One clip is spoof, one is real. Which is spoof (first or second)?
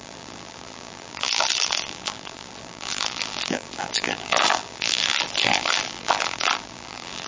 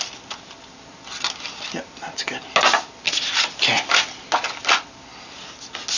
first